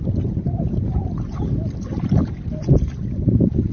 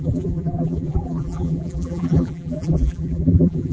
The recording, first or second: first